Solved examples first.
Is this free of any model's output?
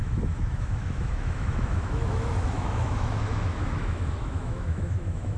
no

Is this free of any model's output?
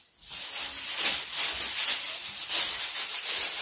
yes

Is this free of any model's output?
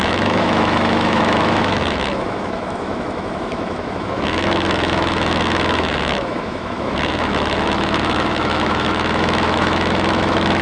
no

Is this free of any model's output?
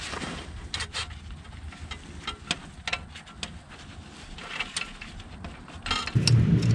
yes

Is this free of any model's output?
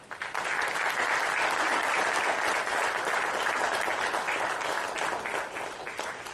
yes